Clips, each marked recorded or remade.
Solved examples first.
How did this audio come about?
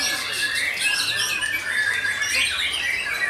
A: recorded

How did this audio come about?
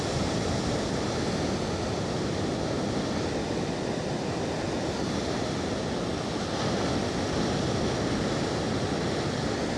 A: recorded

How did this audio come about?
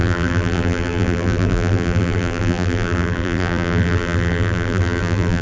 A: remade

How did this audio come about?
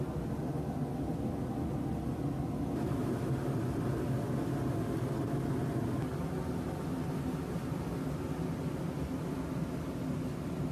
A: recorded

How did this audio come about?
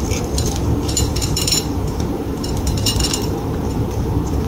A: remade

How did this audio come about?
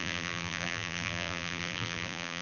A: remade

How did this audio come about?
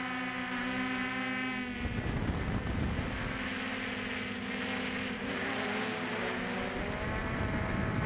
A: recorded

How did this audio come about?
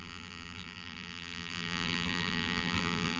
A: remade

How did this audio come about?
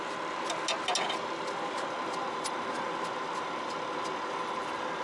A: recorded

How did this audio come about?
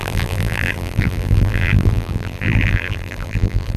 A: remade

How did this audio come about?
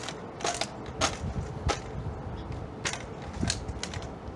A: recorded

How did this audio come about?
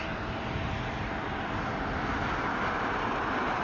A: remade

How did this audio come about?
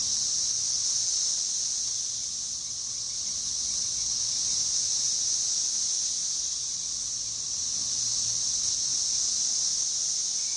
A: recorded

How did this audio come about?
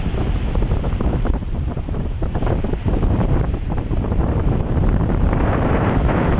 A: remade